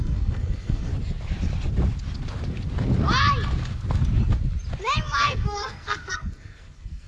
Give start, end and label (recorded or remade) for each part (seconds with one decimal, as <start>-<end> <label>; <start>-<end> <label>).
0.0-0.9 remade; 0.9-5.2 recorded; 5.2-7.1 remade